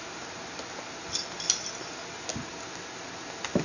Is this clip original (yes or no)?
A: yes